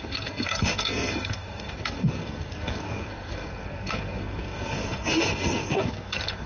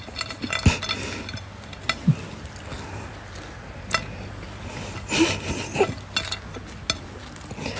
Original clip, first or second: second